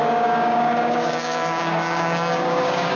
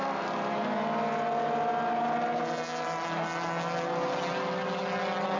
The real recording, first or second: second